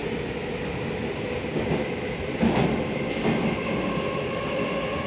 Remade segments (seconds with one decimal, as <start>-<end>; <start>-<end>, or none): 1.4-1.8